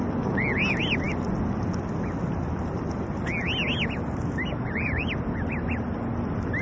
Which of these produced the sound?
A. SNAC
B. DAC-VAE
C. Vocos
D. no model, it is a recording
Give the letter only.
D